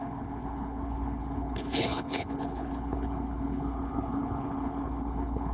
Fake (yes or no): yes